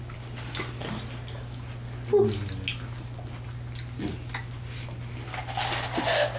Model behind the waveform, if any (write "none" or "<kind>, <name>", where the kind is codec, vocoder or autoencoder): none